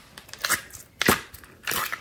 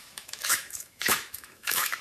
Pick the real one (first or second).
first